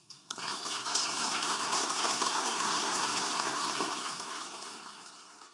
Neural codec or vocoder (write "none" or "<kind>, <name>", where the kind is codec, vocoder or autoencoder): codec, SNAC